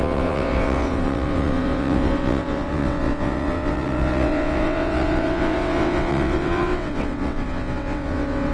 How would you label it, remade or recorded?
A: remade